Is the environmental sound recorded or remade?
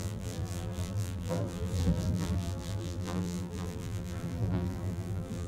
remade